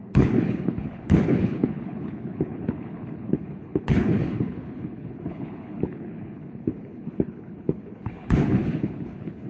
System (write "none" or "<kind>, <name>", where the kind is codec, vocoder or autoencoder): codec, HILCodec